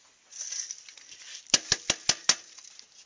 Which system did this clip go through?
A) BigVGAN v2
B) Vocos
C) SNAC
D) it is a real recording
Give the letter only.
D